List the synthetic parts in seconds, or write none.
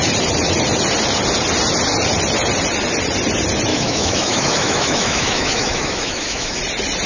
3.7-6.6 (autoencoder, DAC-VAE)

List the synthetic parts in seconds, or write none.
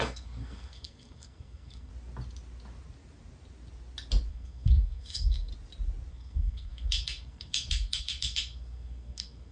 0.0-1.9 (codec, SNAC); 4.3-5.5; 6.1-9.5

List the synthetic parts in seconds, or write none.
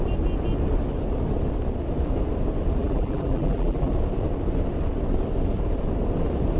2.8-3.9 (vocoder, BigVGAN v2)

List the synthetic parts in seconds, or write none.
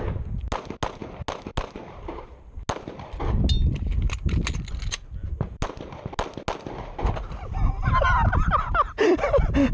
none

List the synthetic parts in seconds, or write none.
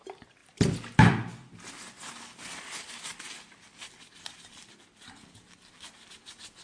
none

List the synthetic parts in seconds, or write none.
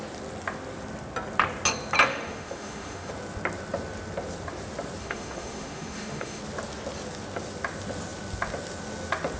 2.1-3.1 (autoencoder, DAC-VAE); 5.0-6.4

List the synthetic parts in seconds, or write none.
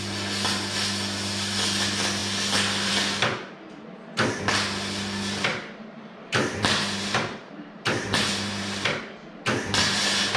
5.5-9.0 (vocoder, BigVGAN v2)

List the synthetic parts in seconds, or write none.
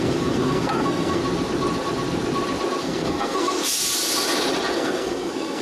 0.0-1.2 (codec, SNAC); 2.8-3.6; 4.7-5.6